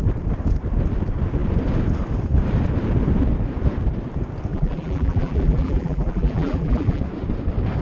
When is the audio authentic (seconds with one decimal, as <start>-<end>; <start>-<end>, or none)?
0.0-4.5; 7.0-7.8